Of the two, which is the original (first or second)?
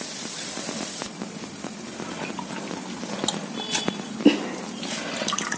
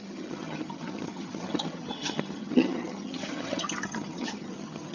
first